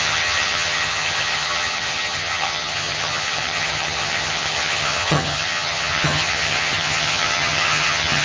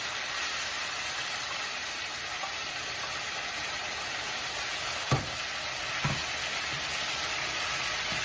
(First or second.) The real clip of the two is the second